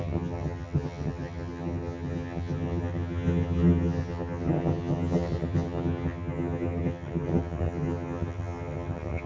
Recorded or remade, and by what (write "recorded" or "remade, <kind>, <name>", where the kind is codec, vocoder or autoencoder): remade, vocoder, HiFi-GAN